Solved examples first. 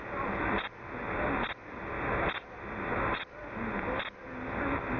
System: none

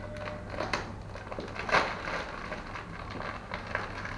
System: none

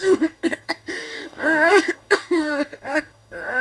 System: codec, DAC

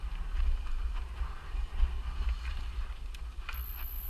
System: none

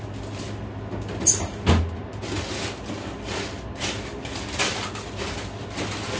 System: none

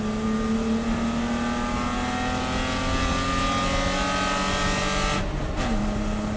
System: none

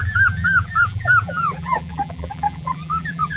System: vocoder, BigVGAN v2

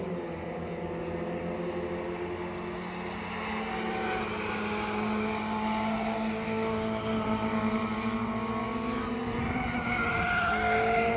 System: none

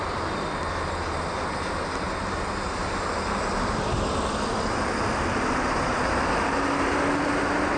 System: none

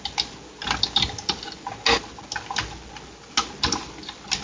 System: none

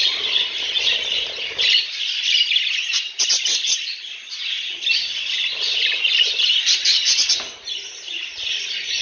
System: none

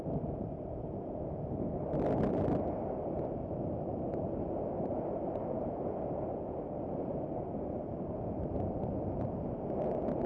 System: none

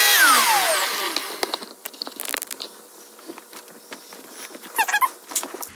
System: none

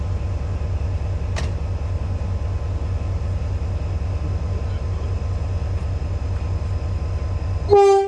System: none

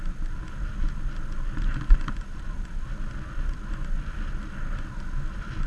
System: none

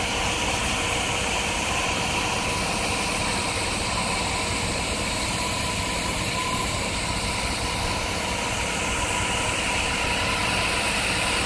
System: none